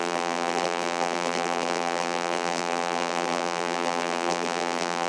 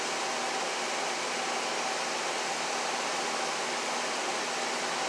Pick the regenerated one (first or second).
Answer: first